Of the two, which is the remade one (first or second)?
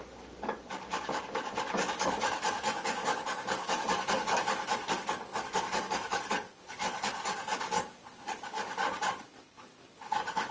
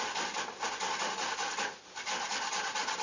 first